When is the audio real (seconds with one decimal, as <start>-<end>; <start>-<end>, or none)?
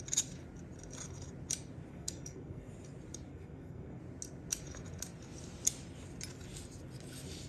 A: 0.0-1.9; 2.7-3.3; 4.0-7.5